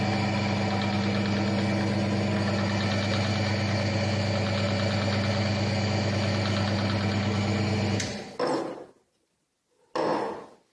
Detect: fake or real real